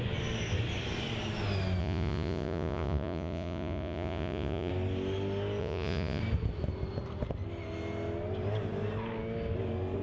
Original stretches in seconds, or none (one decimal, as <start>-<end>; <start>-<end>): 0.0-1.8; 4.7-5.6; 6.2-10.0